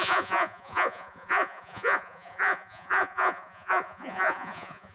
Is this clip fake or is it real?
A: fake